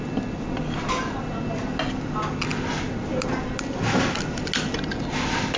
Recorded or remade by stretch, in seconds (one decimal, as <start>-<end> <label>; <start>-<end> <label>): 0.0-5.6 recorded

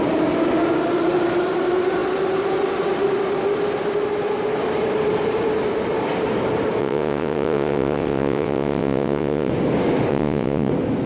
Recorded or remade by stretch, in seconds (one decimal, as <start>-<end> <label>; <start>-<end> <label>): 0.0-6.8 recorded; 6.8-9.5 remade; 9.5-10.1 recorded; 10.1-10.7 remade; 10.7-11.1 recorded

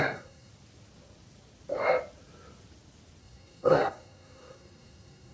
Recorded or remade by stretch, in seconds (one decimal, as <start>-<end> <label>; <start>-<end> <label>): 0.0-0.5 remade; 0.5-3.2 recorded; 3.2-5.3 remade